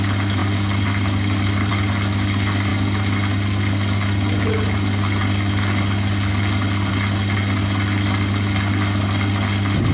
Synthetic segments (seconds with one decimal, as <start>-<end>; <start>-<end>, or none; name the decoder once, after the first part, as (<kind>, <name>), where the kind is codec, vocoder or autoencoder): none